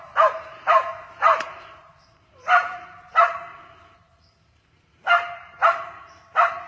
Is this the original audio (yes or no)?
no